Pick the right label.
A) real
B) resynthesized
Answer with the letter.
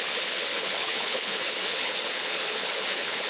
B